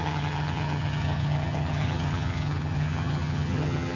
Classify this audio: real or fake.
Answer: fake